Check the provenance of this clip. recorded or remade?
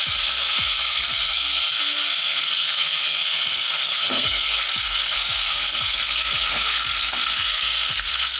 remade